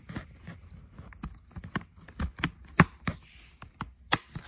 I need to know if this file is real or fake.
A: real